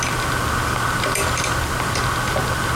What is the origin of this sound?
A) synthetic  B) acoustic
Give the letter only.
B